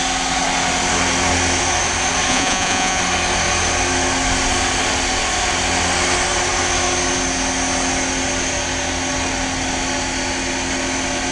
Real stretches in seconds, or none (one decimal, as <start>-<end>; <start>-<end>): 0.0-2.3; 3.0-11.3